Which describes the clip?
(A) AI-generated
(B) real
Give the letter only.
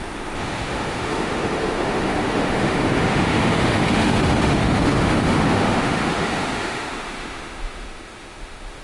A